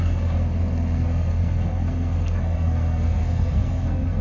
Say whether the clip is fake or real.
fake